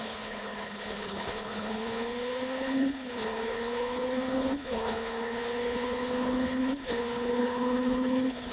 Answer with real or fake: fake